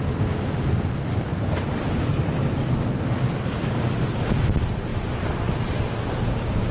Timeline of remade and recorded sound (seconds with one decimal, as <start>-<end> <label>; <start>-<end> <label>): 0.0-6.7 recorded